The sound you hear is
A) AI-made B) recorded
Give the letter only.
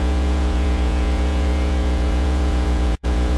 A